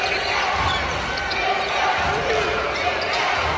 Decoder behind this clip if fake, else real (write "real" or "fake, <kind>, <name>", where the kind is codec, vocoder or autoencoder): real